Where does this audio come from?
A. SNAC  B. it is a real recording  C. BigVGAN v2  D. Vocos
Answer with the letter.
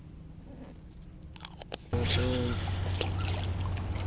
B